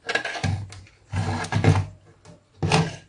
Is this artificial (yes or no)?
no